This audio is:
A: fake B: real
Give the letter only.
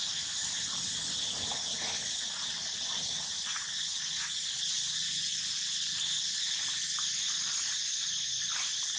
B